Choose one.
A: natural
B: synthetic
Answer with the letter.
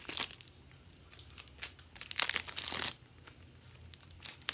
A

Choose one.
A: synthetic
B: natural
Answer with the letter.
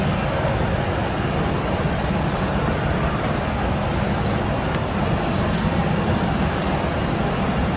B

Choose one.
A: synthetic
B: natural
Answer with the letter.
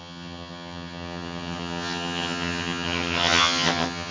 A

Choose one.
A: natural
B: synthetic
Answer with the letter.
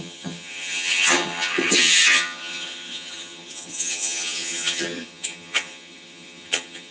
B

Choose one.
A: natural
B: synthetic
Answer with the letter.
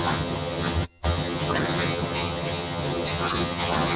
B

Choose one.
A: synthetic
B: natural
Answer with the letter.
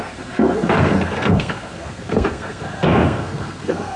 A